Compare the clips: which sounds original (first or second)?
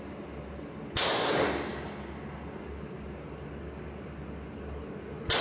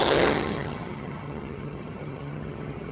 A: first